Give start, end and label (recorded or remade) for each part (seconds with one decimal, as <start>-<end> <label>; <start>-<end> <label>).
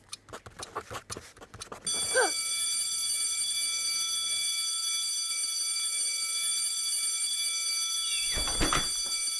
0.0-9.4 recorded